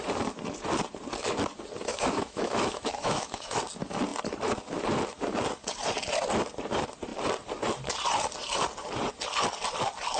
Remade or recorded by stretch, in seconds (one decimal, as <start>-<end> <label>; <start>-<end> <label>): 0.0-1.9 recorded; 1.9-3.6 remade; 3.6-10.2 recorded